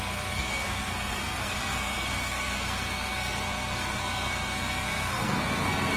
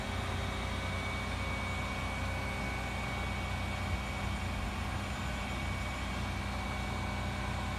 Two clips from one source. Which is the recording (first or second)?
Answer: second